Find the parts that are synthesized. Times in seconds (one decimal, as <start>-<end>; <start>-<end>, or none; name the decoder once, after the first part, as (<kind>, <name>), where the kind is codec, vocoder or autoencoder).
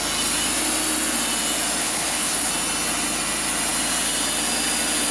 1.8-2.5 (codec, HILCodec)